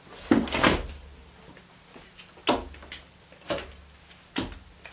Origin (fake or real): real